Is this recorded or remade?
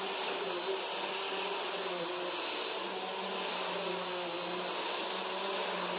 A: recorded